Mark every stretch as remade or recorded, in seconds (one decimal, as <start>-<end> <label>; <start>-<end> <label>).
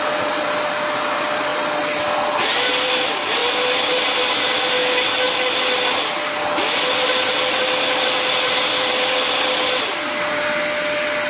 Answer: 0.0-11.3 recorded